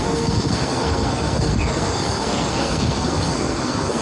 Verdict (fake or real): fake